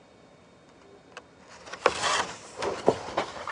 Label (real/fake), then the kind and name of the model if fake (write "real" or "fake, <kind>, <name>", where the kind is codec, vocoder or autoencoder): real